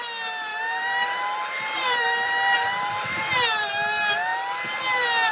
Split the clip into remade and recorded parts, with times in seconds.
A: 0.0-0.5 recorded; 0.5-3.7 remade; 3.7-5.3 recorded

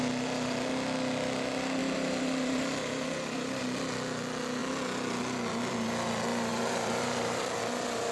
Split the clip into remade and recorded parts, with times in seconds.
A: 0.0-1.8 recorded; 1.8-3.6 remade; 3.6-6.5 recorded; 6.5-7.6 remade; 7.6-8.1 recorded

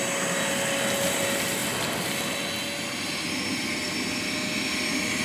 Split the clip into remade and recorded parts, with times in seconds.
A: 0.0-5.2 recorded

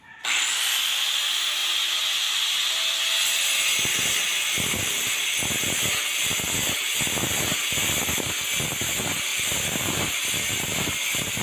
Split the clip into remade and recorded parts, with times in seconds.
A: 0.0-9.3 recorded; 9.3-11.4 remade

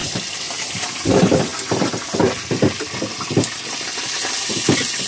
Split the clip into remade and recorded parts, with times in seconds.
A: 0.0-0.6 recorded; 0.6-1.5 remade; 1.5-4.4 recorded; 4.4-5.1 remade

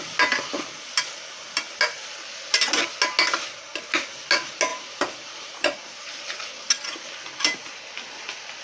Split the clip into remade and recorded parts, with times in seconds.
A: 0.0-4.7 recorded; 4.7-6.7 remade; 6.7-8.6 recorded